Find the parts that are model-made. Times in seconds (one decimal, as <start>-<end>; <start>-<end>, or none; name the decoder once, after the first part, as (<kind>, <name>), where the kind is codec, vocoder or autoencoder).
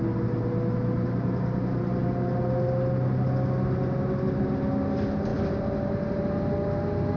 none